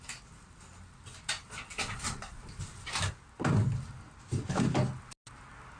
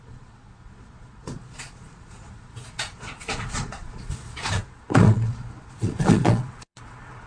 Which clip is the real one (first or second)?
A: first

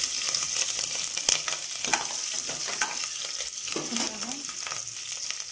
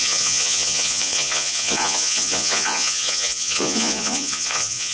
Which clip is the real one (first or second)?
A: first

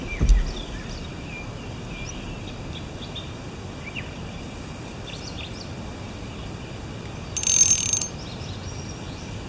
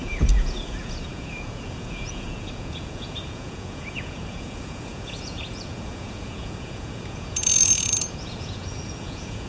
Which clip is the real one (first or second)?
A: first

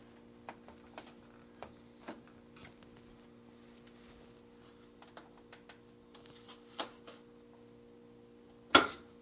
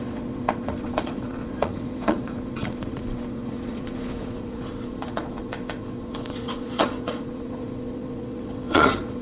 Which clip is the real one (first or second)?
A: first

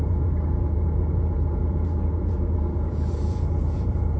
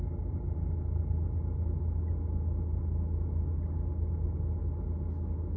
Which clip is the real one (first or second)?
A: second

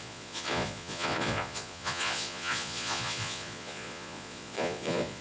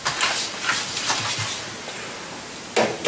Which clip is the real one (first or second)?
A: second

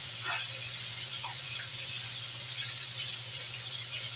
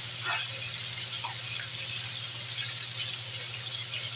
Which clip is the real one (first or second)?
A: second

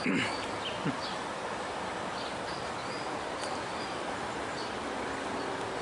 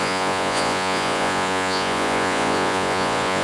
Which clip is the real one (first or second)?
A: first